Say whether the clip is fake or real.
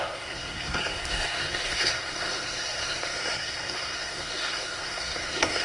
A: fake